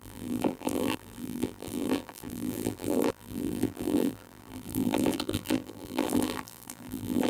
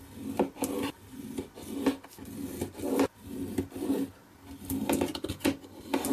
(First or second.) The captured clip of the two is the second